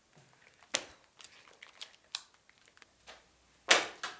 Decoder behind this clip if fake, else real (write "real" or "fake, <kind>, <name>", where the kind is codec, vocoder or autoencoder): real